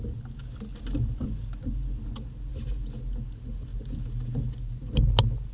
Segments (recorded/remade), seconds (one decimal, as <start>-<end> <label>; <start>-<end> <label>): 0.0-5.5 recorded